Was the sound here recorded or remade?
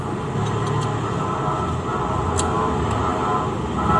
recorded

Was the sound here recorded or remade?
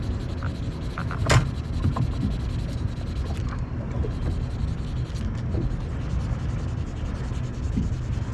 recorded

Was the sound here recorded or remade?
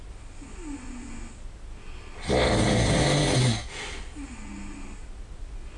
recorded